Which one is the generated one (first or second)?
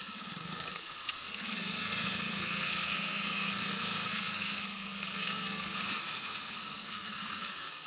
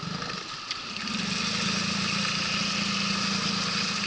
first